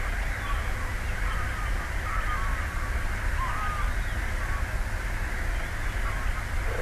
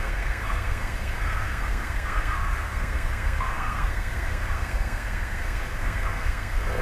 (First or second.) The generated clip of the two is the second